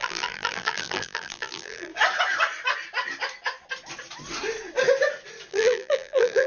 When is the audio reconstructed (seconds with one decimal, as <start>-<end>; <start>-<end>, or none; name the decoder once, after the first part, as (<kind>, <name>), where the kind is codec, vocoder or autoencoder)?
0.0-1.9 (vocoder, BigVGAN v2); 5.5-6.5